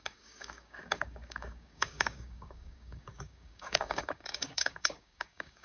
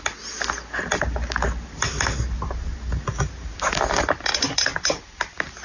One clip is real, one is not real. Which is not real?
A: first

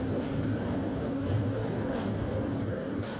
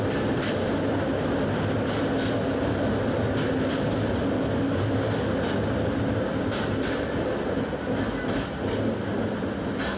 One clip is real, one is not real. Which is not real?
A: first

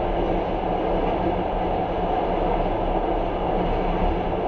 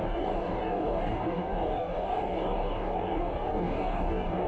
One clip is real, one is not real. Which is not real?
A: second